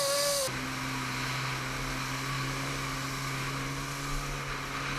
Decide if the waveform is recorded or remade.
recorded